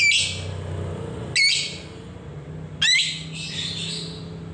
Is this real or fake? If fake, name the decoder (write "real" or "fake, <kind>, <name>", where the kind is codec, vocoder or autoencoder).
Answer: real